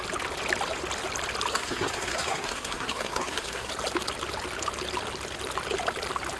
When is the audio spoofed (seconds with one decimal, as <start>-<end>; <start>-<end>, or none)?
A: 1.5-3.7